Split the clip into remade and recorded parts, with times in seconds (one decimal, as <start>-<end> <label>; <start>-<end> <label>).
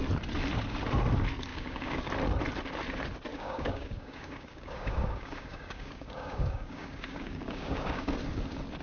0.0-1.5 recorded; 1.5-2.1 remade; 2.1-3.3 recorded; 3.3-8.1 remade; 8.1-8.8 recorded